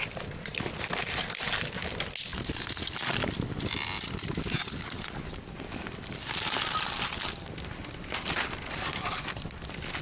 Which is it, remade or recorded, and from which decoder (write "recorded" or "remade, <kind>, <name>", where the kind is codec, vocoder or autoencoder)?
recorded